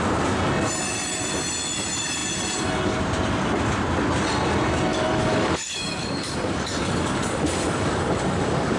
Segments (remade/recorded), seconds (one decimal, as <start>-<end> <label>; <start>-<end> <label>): 0.0-4.9 recorded; 4.9-8.8 remade